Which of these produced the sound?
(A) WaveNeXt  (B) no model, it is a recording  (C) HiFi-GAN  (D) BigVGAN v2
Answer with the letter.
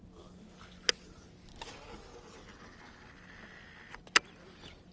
B